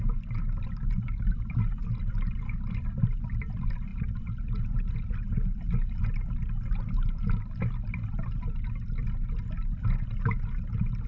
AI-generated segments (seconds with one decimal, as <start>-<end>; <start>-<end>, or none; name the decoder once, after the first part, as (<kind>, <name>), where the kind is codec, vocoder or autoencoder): none